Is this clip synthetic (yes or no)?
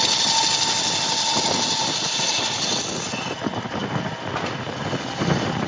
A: no